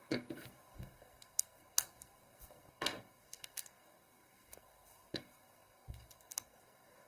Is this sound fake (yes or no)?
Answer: yes